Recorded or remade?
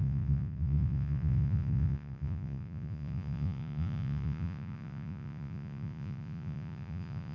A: remade